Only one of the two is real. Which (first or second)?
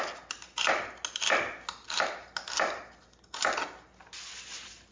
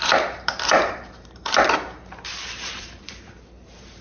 first